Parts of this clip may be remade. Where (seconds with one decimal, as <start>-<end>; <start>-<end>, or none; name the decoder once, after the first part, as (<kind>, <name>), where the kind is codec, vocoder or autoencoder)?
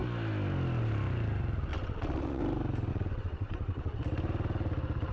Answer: 1.7-2.4 (vocoder, WaveNeXt); 2.9-4.0